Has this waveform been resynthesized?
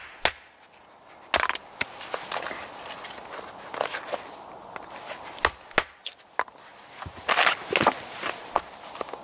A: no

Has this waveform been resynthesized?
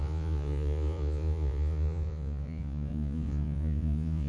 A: yes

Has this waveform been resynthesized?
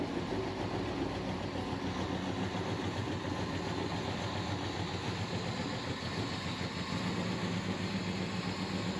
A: no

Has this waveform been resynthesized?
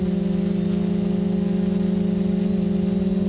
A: no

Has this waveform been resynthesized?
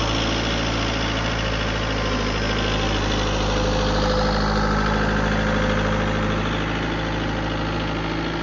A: no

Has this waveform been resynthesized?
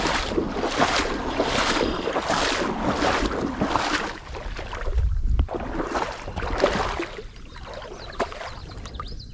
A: no